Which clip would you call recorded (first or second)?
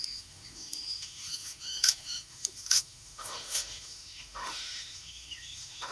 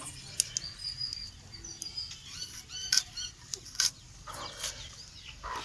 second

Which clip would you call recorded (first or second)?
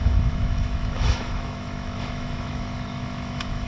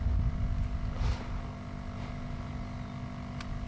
second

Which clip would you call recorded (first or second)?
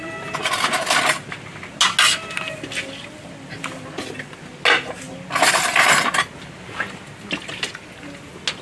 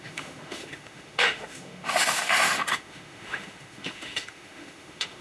first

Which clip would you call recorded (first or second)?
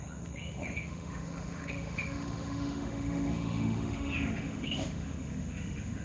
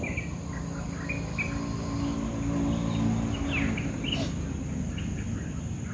second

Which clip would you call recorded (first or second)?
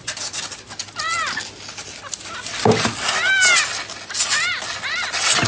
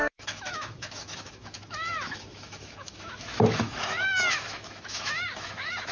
first